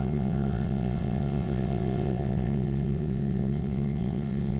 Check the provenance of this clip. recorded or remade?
remade